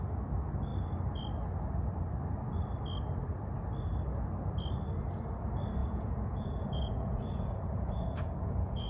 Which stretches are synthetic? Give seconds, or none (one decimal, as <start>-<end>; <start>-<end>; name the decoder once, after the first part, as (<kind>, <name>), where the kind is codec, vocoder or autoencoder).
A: 5.8-8.9 (vocoder, Vocos)